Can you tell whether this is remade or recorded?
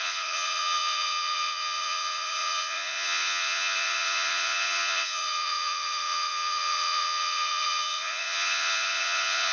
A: remade